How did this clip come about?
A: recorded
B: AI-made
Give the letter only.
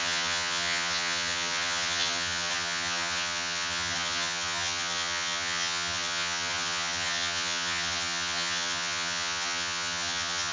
B